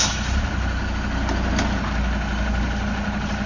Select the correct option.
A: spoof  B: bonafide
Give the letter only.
B